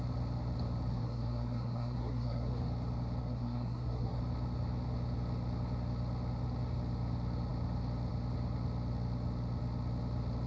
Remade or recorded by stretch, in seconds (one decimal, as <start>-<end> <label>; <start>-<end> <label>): 0.0-0.9 recorded; 0.9-2.5 remade; 2.5-3.2 recorded; 3.2-4.2 remade; 4.2-10.5 recorded